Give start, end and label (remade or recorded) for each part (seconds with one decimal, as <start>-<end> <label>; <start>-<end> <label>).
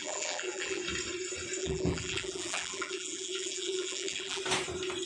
0.0-0.8 remade; 0.8-1.6 recorded; 1.6-4.4 remade; 4.4-5.1 recorded